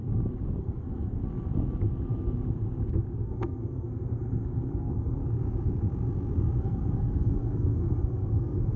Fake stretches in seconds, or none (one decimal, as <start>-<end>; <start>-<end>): 0.6-1.2; 3.2-5.2; 6.6-8.8